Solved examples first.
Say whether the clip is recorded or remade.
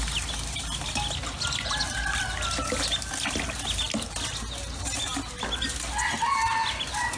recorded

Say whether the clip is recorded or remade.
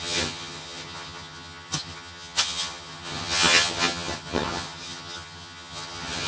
remade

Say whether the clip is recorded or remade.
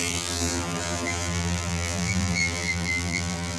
remade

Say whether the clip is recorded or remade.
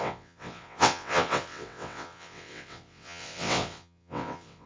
remade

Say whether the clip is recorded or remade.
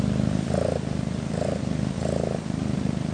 recorded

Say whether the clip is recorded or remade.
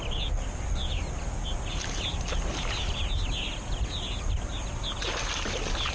recorded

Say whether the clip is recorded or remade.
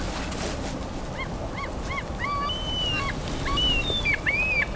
recorded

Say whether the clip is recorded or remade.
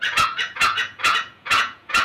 remade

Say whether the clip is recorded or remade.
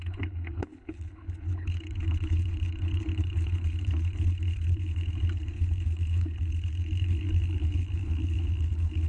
remade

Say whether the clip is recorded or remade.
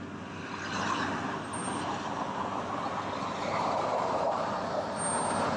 recorded